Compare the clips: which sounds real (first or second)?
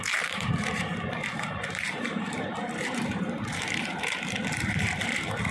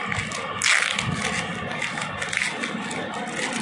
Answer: second